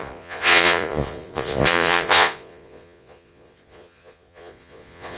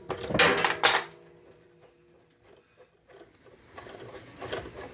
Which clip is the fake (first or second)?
first